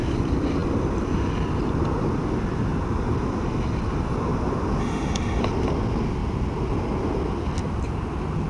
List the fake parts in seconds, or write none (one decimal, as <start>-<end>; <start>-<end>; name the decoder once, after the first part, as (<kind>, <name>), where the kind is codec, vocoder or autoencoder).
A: 4.8-5.4 (autoencoder, DAC-VAE)